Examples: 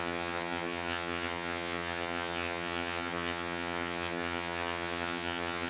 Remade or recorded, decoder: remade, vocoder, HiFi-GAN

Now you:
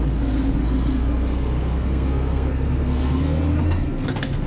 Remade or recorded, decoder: remade, codec, SNAC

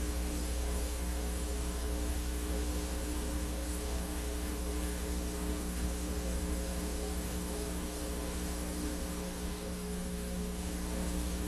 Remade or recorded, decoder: remade, codec, DAC